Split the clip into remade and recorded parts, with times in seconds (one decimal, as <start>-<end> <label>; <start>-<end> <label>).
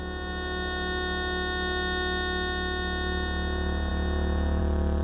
0.0-5.0 recorded